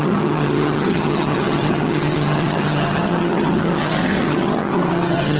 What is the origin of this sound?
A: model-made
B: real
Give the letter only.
A